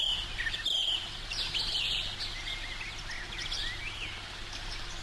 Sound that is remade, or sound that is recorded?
recorded